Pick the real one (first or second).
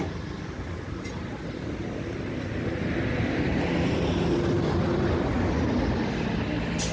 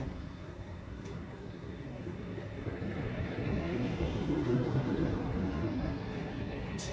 first